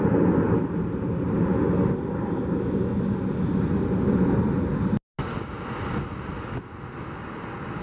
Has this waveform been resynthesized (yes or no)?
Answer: no